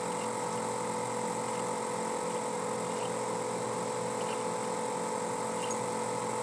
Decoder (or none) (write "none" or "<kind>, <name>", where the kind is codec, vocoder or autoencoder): none